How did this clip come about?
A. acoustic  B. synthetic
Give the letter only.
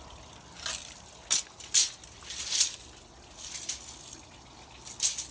A